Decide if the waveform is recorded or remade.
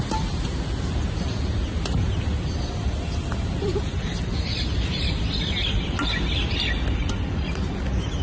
recorded